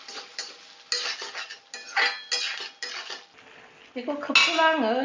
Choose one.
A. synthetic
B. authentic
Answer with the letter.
B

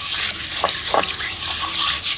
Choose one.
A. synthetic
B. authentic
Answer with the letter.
B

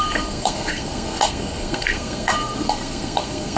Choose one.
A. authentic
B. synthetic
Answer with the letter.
B